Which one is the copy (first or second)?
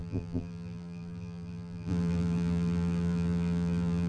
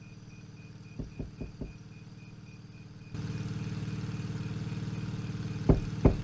first